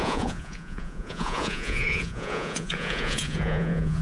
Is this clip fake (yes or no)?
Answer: yes